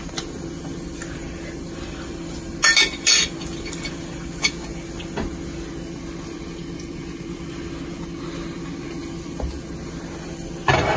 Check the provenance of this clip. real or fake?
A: real